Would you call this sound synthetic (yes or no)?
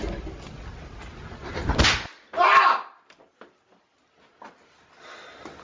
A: no